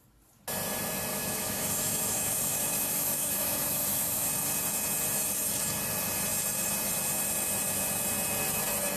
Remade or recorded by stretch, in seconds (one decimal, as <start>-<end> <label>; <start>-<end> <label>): 0.0-1.1 recorded; 1.1-4.3 remade; 4.3-9.0 recorded